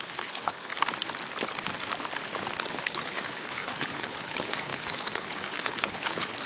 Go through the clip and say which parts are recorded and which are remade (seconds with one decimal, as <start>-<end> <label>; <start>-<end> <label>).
0.0-0.7 remade; 0.7-2.8 recorded; 2.8-6.5 remade